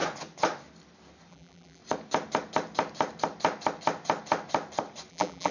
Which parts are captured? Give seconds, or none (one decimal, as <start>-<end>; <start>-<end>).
0.0-1.3; 1.8-5.1